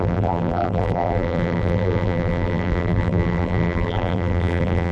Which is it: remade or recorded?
remade